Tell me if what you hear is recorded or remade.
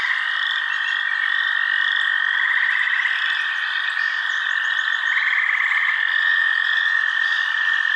recorded